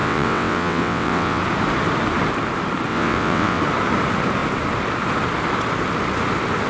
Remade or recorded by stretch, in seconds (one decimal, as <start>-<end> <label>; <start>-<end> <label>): 0.0-1.4 remade; 1.4-2.9 recorded; 2.9-3.6 remade; 3.6-6.7 recorded